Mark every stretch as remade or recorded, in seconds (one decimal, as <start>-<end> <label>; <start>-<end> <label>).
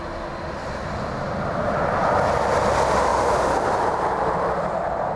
0.0-5.2 recorded